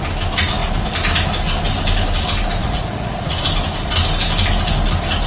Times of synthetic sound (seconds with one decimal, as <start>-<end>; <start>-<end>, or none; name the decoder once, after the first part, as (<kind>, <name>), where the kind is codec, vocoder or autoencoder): 2.6-3.3 (vocoder, Vocos)